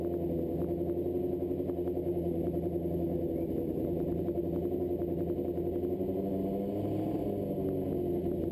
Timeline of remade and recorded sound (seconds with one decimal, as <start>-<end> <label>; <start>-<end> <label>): 0.0-2.1 recorded; 2.1-4.4 remade; 4.4-8.5 recorded